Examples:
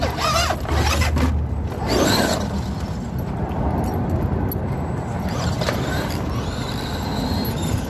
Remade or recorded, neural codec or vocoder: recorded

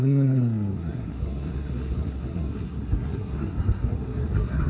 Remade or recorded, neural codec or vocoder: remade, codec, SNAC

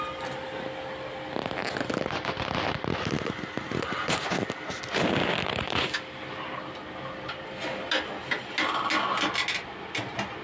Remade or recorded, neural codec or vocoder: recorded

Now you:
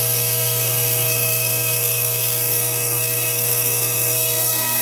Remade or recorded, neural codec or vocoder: remade, codec, SNAC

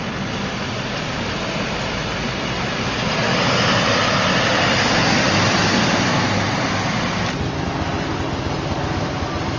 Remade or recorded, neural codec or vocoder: recorded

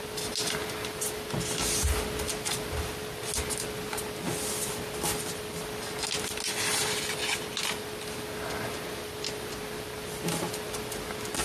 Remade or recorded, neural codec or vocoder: recorded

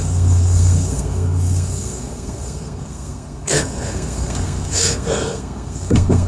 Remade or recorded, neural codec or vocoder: remade, codec, SNAC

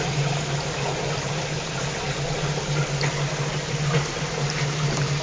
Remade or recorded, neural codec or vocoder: recorded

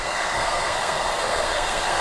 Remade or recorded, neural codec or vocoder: remade, codec, SNAC